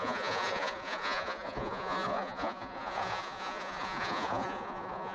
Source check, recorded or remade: remade